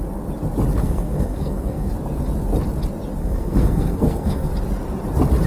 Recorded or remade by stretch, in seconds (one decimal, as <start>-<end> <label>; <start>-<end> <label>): 0.0-0.8 recorded; 0.8-1.9 remade; 1.9-3.2 recorded; 3.2-4.5 remade; 4.5-5.5 recorded